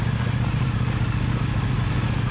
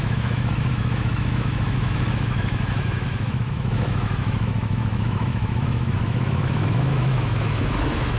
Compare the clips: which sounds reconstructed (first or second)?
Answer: second